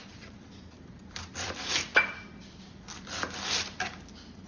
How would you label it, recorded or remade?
recorded